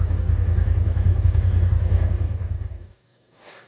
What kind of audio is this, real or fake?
fake